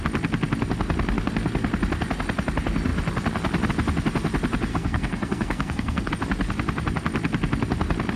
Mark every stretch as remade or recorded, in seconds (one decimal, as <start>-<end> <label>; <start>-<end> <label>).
0.0-4.7 recorded; 4.7-6.1 remade; 6.1-8.2 recorded